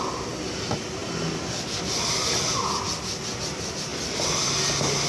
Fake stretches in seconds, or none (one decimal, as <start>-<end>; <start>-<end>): none